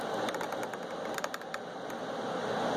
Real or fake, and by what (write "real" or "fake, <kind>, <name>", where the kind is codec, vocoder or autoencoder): real